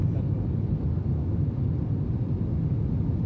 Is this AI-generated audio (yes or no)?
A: no